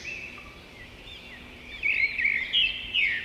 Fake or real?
real